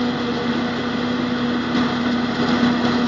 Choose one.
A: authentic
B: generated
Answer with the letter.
A